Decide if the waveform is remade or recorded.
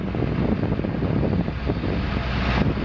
recorded